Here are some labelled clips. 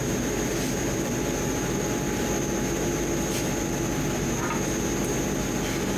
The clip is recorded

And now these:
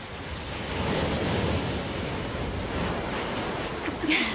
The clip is recorded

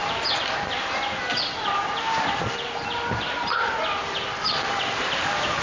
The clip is recorded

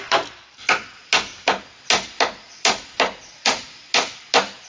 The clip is recorded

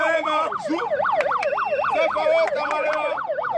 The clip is recorded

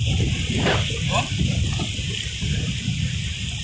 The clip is remade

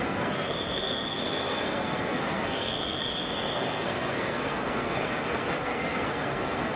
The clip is remade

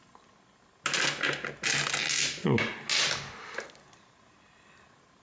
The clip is recorded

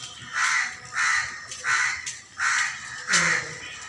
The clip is recorded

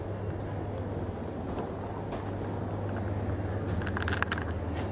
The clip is recorded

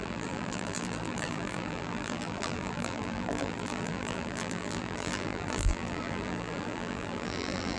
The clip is remade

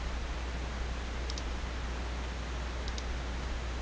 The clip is recorded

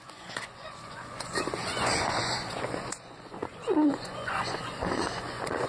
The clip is remade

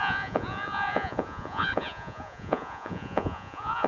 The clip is remade